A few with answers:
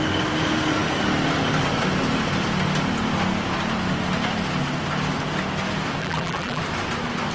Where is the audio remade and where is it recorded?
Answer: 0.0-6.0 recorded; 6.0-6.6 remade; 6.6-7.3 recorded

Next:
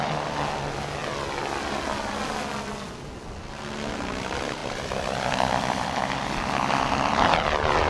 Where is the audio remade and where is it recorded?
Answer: 0.0-4.6 recorded; 4.6-6.0 remade; 6.0-7.9 recorded

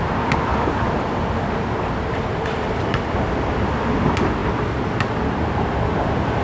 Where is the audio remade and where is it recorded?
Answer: 0.0-0.5 recorded; 0.5-3.8 remade; 3.8-6.4 recorded

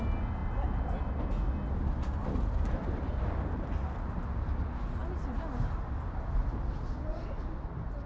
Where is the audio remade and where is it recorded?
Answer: 0.0-8.1 recorded